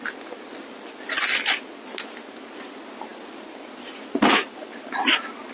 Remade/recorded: recorded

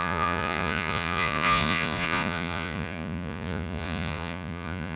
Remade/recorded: remade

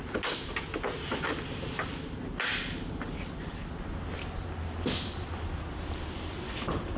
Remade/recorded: recorded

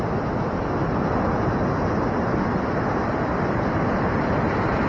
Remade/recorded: recorded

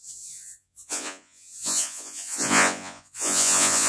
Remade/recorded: remade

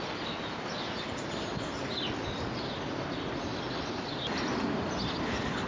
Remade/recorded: recorded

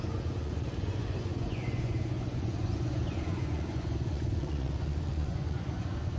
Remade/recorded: remade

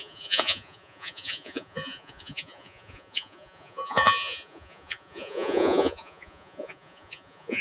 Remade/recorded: remade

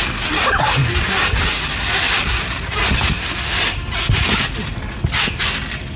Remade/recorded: recorded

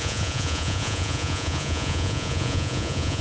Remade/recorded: remade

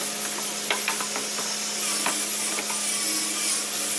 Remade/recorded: recorded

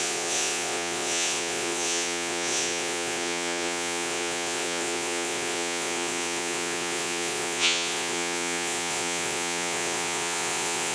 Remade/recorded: remade